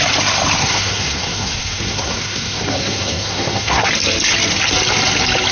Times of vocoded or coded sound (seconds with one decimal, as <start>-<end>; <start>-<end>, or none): 0.6-3.9